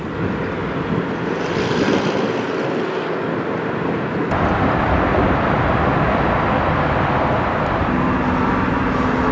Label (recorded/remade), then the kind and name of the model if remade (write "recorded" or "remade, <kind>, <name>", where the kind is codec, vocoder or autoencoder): recorded